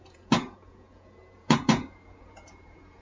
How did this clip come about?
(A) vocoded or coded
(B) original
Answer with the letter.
A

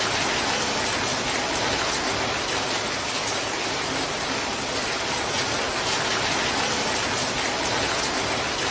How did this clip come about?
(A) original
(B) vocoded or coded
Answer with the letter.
A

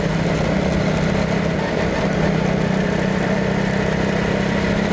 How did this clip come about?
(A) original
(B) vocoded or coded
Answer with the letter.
A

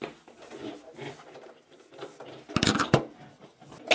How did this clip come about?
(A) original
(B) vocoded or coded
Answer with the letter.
A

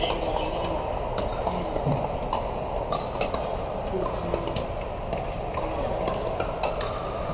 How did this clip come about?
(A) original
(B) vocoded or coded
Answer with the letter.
A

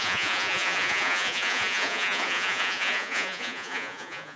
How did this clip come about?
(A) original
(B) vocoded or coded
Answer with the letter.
B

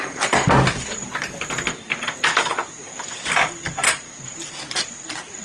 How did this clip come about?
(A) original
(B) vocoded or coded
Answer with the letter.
A